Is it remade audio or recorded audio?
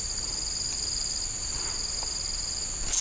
recorded